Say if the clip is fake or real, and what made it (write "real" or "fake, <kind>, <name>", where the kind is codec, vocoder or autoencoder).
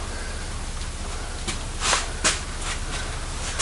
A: real